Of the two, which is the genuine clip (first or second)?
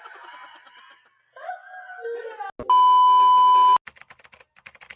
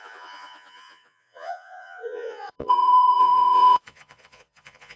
first